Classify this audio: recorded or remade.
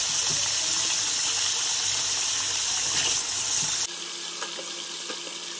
recorded